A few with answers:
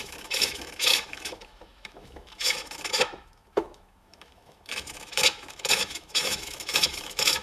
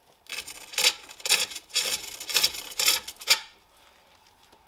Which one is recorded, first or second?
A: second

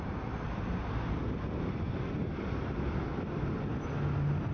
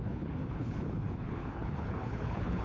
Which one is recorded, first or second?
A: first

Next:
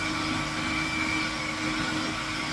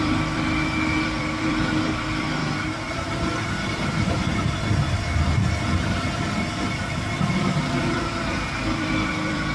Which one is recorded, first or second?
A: first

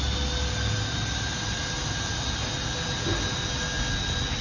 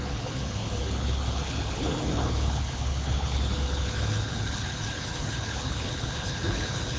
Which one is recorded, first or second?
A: first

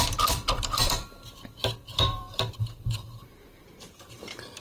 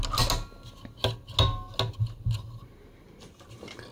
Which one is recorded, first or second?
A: second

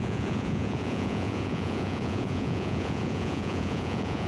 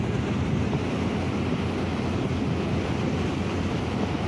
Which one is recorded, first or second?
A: second